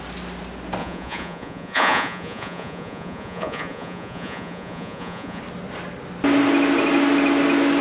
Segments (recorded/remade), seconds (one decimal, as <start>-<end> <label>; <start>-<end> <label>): 0.0-0.8 recorded; 0.8-5.4 remade; 5.4-7.8 recorded